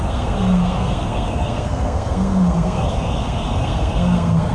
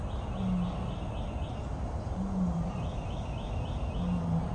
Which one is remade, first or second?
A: first